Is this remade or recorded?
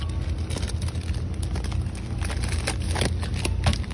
recorded